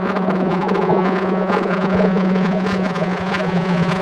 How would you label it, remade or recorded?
remade